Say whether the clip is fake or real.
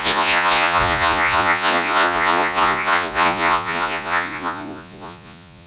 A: fake